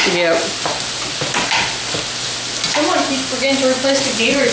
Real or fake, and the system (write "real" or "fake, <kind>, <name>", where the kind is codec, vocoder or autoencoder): real